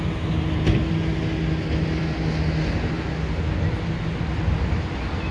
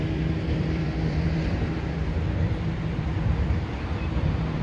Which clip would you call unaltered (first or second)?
first